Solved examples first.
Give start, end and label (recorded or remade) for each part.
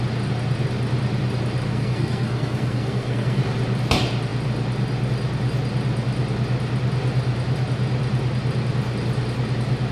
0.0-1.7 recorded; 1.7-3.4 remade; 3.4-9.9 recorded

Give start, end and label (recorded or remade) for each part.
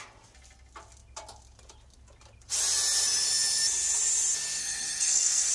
0.0-4.6 recorded; 4.6-5.5 remade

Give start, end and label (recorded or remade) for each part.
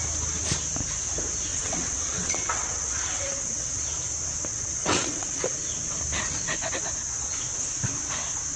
0.0-1.5 recorded; 1.5-3.8 remade; 3.8-4.5 recorded; 4.5-5.4 remade; 5.4-8.6 recorded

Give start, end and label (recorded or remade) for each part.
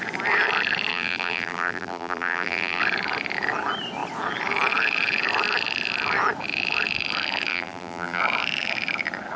0.0-0.9 recorded; 0.9-2.8 remade; 2.8-7.5 recorded; 7.5-8.2 remade; 8.2-9.4 recorded